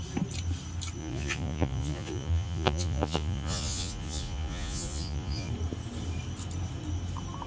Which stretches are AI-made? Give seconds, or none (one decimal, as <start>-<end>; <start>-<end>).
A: 1.0-5.5